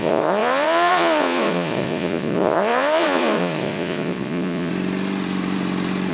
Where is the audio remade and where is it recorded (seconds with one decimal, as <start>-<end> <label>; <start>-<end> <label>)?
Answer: 0.0-4.7 remade; 4.7-6.1 recorded